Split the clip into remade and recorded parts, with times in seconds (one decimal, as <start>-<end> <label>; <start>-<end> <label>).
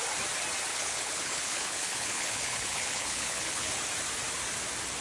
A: 0.0-0.7 recorded; 0.7-3.7 remade; 3.7-5.0 recorded